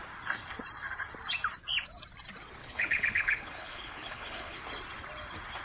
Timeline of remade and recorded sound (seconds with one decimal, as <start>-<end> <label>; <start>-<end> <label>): 0.0-2.6 recorded; 2.6-4.6 remade; 4.6-5.6 recorded